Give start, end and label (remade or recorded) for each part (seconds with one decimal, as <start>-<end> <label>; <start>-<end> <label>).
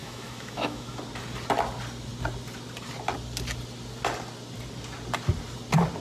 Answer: 0.0-1.0 remade; 1.0-6.0 recorded